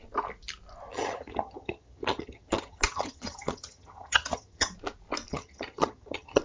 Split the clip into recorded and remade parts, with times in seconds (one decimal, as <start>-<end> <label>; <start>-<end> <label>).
0.0-0.9 recorded; 0.9-4.7 remade; 4.7-5.3 recorded; 5.3-6.4 remade